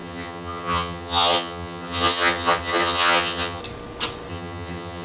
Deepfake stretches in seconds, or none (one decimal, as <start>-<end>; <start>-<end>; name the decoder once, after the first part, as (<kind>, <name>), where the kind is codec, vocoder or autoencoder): 0.0-3.6 (vocoder, HiFi-GAN); 4.3-5.0